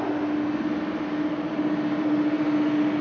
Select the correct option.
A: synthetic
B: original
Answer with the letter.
B